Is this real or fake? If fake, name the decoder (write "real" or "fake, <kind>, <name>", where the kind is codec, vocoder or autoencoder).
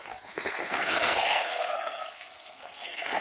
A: fake, codec, SNAC